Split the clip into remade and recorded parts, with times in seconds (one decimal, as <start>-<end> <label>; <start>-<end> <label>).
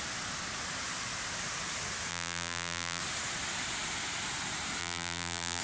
0.0-2.1 recorded; 2.1-3.0 remade; 3.0-4.8 recorded; 4.8-5.6 remade